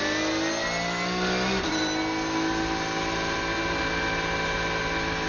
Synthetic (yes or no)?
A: no